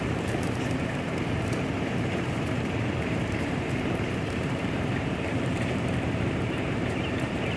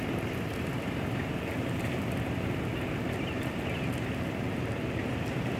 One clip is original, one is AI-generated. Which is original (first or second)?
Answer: second